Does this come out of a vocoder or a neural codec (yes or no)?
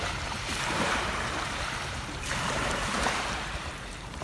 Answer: yes